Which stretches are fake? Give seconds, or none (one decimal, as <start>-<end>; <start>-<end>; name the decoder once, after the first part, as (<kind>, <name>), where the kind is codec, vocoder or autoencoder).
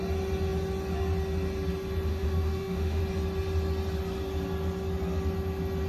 2.1-3.0 (autoencoder, DAC-VAE)